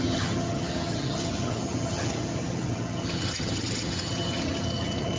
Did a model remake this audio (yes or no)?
yes